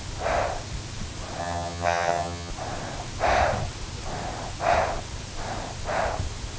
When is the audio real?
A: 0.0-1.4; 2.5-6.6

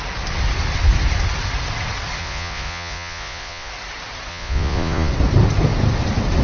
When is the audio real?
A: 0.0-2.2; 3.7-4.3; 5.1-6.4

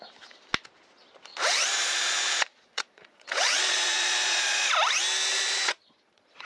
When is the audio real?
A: 0.0-1.3; 4.7-5.3